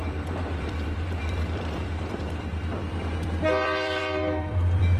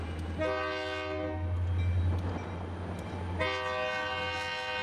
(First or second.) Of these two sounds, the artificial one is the first